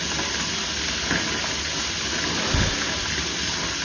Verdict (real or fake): real